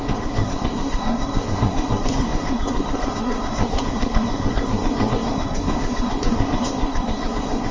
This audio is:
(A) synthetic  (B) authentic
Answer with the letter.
A